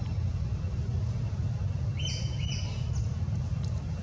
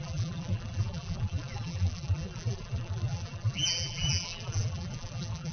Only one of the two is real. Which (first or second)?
first